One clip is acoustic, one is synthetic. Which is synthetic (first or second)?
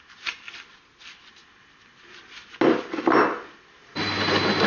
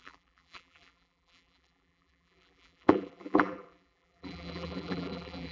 second